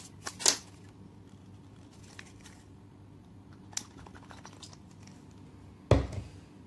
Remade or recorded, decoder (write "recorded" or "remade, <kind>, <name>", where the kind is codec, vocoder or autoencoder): recorded